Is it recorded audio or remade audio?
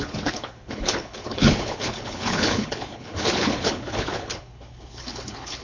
remade